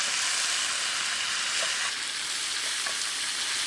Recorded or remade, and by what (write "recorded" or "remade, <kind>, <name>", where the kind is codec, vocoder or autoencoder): recorded